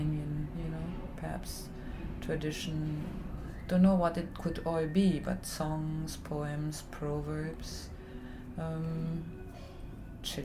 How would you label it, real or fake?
real